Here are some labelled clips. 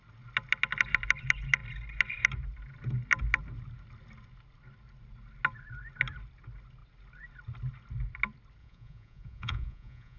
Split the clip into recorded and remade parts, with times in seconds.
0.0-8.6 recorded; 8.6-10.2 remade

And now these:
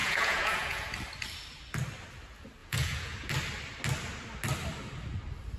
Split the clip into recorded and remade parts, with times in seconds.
0.0-0.9 remade; 0.9-2.6 recorded; 2.6-3.3 remade; 3.3-5.6 recorded

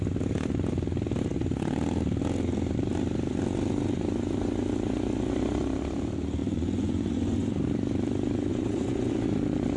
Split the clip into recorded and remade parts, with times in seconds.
0.0-6.4 recorded; 6.4-7.6 remade; 7.6-8.5 recorded; 8.5-9.1 remade; 9.1-9.8 recorded

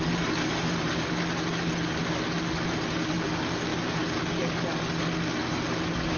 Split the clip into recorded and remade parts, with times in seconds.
0.0-6.2 recorded